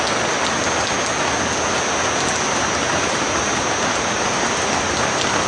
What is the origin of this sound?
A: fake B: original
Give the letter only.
B